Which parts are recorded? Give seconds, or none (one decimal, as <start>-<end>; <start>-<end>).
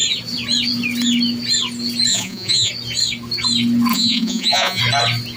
0.0-2.1; 2.7-3.9; 4.8-5.4